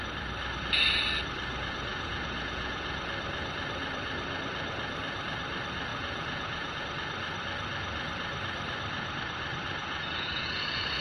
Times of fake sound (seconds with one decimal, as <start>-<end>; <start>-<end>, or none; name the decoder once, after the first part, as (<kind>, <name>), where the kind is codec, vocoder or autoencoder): 1.9-3.0 (vocoder, Vocos); 5.9-6.8; 9.8-11.0